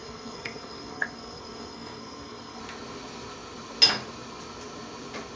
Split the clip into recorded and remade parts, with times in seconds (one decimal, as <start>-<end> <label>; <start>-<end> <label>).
0.0-2.6 remade; 2.6-5.4 recorded